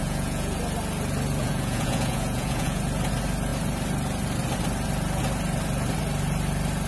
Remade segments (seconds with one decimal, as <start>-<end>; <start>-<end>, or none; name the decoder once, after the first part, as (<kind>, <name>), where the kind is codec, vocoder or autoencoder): 0.0-0.6 (vocoder, Vocos); 1.4-2.8